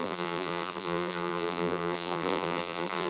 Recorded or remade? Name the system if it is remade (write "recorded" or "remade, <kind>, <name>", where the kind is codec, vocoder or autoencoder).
remade, vocoder, BigVGAN v2